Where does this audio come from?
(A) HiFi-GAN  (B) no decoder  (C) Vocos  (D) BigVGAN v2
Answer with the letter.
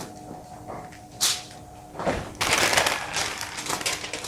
B